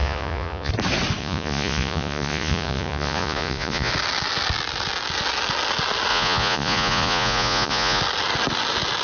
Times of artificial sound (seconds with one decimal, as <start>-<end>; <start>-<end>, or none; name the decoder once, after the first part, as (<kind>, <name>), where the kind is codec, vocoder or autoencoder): 0.0-0.7 (vocoder, Vocos); 1.2-3.9; 6.1-8.0